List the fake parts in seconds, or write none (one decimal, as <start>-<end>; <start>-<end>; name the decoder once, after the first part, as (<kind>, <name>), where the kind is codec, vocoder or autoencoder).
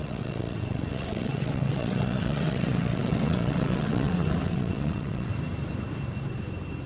0.0-5.3 (vocoder, WaveNeXt)